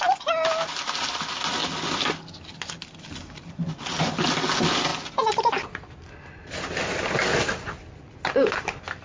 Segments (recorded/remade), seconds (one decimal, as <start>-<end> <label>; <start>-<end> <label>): 0.0-9.0 recorded